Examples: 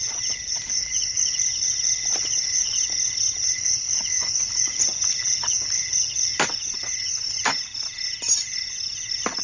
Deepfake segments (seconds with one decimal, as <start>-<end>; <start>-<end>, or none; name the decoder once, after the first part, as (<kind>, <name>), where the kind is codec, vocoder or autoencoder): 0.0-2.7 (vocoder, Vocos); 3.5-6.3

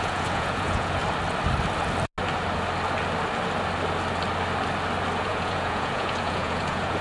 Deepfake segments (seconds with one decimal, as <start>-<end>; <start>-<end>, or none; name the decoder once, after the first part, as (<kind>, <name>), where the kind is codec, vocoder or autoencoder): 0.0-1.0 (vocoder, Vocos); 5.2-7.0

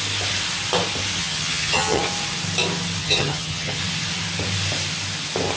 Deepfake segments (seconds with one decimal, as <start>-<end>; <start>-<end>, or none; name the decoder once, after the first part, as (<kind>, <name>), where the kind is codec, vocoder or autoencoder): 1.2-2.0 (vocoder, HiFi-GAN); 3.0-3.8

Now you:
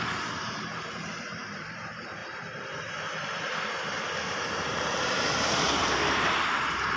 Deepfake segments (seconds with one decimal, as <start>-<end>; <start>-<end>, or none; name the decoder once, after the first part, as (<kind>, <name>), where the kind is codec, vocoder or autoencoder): 0.0-7.0 (vocoder, BigVGAN v2)

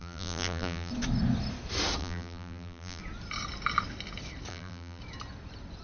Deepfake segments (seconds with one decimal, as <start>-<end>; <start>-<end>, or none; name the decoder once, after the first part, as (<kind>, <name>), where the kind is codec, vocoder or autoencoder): 0.0-0.9 (vocoder, BigVGAN v2); 2.0-3.0; 4.5-5.0

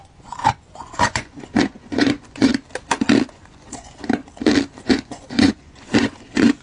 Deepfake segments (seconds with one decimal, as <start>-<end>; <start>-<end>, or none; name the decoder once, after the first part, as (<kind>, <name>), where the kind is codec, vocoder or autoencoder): 0.0-2.5 (vocoder, Vocos); 3.3-4.2; 4.8-6.6

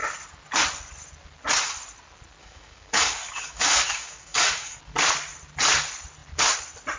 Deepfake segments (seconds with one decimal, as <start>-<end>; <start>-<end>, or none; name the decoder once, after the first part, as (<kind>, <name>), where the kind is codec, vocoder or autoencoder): 2.4-4.8 (codec, DAC)

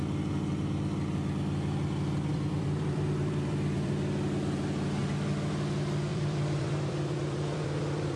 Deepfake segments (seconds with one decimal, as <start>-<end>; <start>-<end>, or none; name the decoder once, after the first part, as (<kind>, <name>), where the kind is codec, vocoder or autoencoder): 2.3-3.9 (vocoder, BigVGAN v2); 6.1-8.2